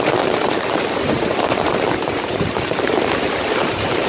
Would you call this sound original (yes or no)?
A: no